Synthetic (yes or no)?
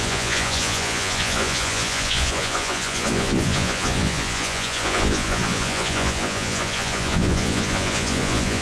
yes